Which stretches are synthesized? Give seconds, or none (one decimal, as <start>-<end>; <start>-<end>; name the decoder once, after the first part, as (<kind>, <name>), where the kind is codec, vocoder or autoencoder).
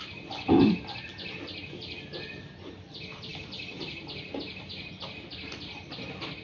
3.3-4.6 (vocoder, BigVGAN v2)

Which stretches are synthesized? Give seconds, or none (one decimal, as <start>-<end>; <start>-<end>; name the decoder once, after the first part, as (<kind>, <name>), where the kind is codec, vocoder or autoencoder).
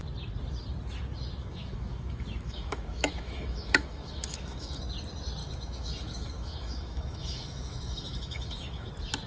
1.4-4.8 (autoencoder, DAC-VAE); 5.4-8.9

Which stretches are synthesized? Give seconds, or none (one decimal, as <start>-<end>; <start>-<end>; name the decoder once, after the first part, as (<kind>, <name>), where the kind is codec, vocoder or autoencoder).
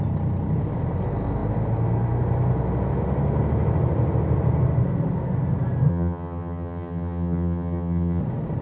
5.9-8.2 (vocoder, HiFi-GAN)